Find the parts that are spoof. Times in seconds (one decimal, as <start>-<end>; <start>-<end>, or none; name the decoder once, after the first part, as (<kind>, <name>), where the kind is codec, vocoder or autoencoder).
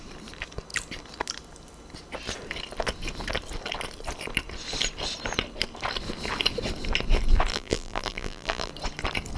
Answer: 7.5-8.7 (vocoder, BigVGAN v2)